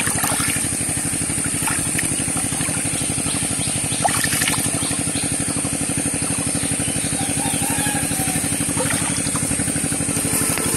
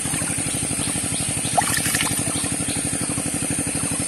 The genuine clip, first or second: first